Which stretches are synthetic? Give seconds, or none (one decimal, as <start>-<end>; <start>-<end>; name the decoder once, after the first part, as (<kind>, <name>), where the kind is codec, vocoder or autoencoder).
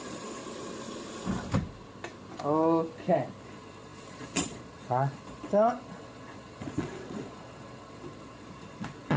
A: 0.0-0.4 (vocoder, Vocos); 3.4-9.2